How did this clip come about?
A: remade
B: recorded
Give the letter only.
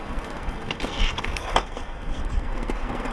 A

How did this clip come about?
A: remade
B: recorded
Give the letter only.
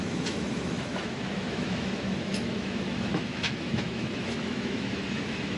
A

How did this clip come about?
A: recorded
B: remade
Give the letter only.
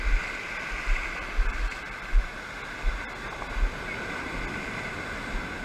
A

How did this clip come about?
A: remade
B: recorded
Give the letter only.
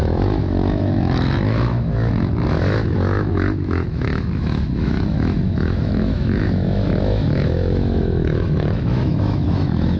A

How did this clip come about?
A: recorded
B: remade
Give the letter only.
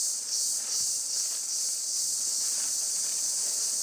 B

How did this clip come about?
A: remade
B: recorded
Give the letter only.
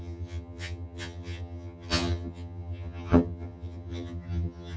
A